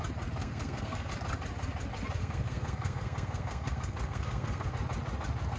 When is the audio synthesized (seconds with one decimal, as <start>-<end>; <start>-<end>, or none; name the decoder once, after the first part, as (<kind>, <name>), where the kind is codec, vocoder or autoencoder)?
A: 0.4-1.1 (codec, SNAC); 2.2-4.7